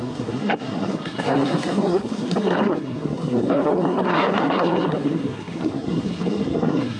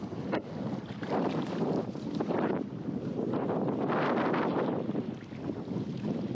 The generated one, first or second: first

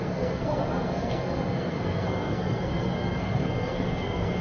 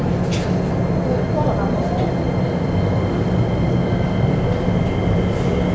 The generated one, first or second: first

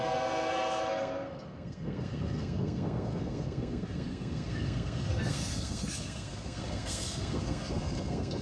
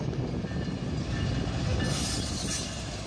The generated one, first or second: first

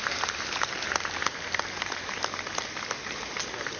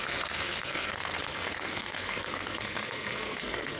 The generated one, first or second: second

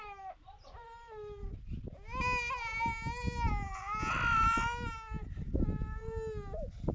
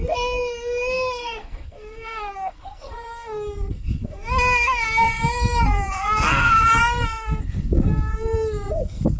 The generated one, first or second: second